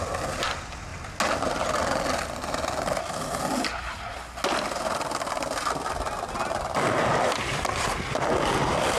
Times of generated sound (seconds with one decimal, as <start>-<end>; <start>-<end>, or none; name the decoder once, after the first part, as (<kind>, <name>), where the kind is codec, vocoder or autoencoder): none